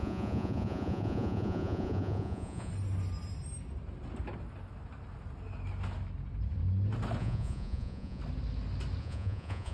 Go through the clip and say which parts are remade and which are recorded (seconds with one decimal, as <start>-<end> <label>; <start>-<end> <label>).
0.0-2.7 remade; 2.7-7.2 recorded; 7.2-8.2 remade; 8.2-9.0 recorded; 9.0-9.7 remade